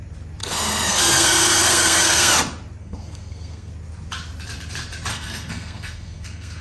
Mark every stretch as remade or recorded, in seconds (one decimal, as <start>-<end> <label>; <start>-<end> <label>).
0.0-0.4 recorded; 0.4-2.3 remade; 2.3-2.8 recorded; 2.8-3.7 remade; 3.7-5.1 recorded; 5.1-6.6 remade